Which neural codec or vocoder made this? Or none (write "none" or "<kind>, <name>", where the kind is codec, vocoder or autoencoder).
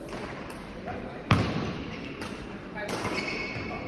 none